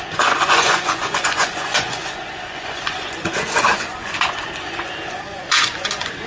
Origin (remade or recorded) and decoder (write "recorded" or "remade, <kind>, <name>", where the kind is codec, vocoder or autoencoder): remade, vocoder, Vocos